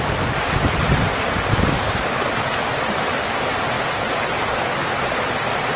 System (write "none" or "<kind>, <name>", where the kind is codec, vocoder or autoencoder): none